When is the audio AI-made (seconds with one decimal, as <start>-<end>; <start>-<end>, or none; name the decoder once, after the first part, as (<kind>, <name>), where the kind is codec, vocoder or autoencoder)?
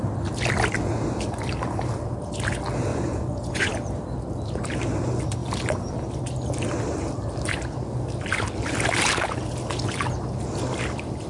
2.9-3.7 (vocoder, Vocos)